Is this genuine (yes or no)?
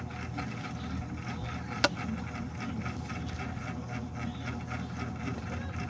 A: yes